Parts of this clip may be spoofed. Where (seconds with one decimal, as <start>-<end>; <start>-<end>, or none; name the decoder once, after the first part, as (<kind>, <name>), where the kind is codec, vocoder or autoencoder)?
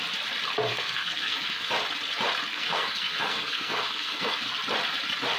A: 0.7-1.7 (codec, SNAC); 2.5-4.6